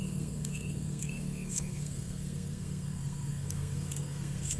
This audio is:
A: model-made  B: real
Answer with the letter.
A